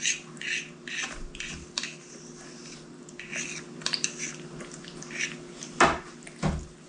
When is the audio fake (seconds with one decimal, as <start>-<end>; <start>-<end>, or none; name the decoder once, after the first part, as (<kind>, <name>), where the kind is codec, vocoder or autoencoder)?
none